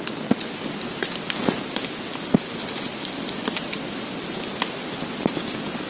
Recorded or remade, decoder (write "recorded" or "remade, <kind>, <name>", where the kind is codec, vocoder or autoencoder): recorded